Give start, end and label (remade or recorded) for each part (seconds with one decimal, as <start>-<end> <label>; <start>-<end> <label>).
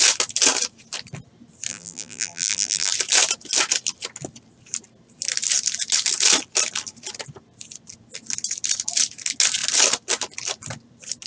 0.0-1.7 recorded; 1.7-2.9 remade; 2.9-11.3 recorded